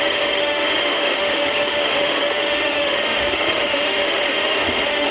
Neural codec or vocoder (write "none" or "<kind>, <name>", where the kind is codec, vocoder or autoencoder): autoencoder, DAC-VAE